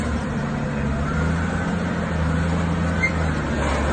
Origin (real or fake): real